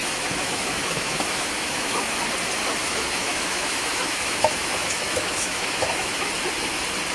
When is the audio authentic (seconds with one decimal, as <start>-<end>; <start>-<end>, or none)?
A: 2.2-2.8; 6.3-7.1